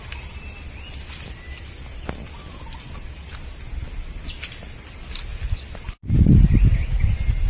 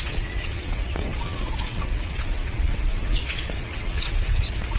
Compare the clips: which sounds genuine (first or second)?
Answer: first